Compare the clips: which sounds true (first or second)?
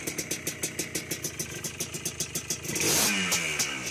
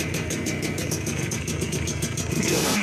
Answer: first